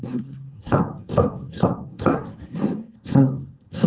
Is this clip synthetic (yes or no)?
yes